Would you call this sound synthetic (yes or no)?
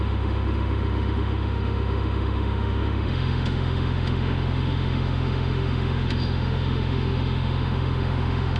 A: yes